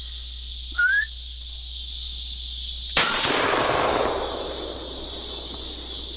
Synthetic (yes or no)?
no